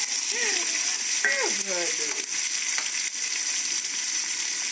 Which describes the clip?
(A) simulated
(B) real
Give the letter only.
B